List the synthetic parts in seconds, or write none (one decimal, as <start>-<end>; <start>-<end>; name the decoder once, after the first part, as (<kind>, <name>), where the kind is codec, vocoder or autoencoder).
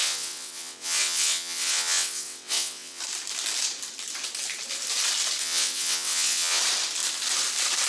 0.0-3.0 (vocoder, WaveNeXt); 5.4-6.6